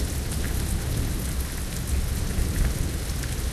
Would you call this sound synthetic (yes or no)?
no